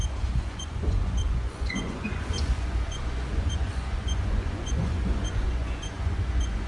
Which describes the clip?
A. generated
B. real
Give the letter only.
A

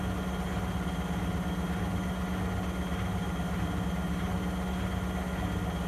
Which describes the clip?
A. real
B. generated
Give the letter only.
A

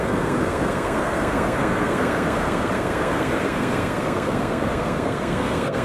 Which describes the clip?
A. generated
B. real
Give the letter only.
A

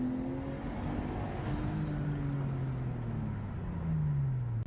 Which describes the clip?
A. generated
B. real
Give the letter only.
B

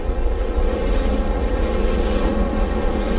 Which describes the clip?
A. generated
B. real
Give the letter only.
A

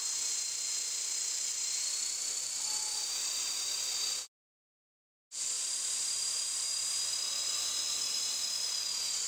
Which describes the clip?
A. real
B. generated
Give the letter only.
A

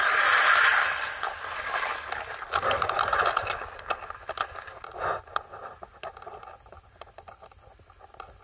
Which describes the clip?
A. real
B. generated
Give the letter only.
A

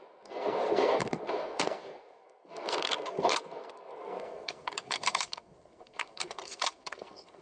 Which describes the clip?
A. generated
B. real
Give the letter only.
A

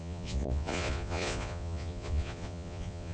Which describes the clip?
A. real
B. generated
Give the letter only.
B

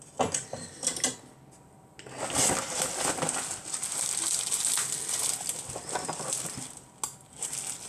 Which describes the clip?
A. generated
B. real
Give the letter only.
B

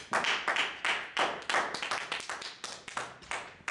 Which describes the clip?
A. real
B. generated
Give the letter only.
A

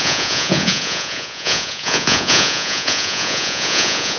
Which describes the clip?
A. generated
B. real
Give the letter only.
A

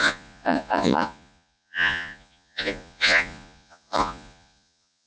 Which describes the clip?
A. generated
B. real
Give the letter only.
A